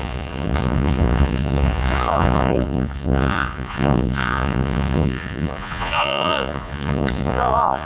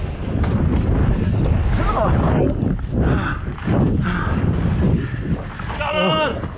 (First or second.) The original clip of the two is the second